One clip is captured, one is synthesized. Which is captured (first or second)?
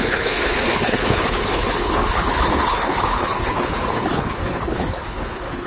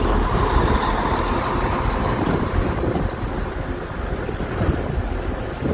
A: second